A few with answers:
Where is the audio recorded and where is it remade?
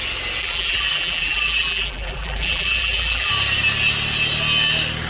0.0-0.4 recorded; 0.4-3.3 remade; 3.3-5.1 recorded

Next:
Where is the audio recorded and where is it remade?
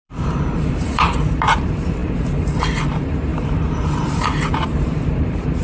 0.0-5.6 remade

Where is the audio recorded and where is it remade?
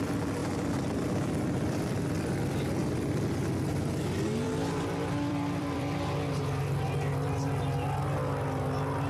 0.0-0.4 recorded; 0.4-2.3 remade; 2.3-2.8 recorded; 2.8-6.2 remade; 6.2-9.1 recorded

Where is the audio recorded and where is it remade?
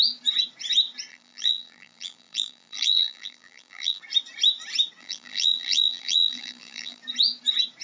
0.0-1.1 recorded; 1.1-4.0 remade; 4.0-5.0 recorded; 5.0-7.0 remade; 7.0-7.8 recorded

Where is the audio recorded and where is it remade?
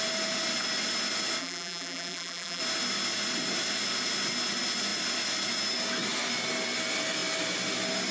0.0-1.4 recorded; 1.4-2.6 remade; 2.6-8.1 recorded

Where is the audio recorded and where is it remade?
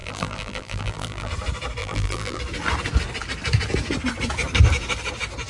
0.0-1.3 remade; 1.3-1.8 recorded; 1.8-2.4 remade; 2.4-5.5 recorded